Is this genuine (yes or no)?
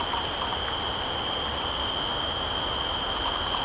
yes